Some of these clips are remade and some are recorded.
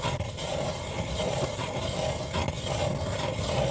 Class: recorded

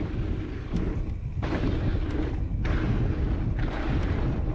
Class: recorded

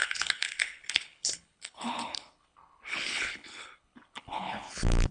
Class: remade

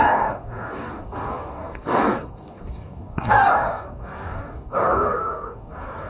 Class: remade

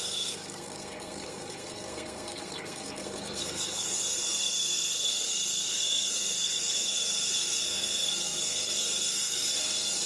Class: remade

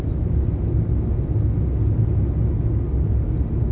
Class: recorded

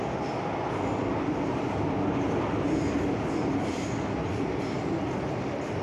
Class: recorded